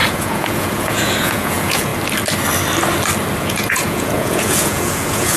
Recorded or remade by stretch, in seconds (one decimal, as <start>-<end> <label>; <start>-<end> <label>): 0.0-1.9 remade; 1.9-3.4 recorded; 3.4-5.4 remade